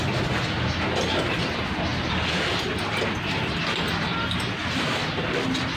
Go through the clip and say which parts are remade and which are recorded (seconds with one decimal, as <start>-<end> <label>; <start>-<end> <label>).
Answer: 0.0-5.8 recorded